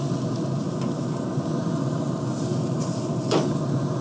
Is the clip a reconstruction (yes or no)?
no